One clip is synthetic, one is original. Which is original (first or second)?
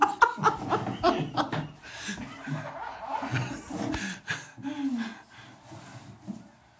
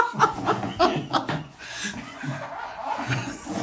first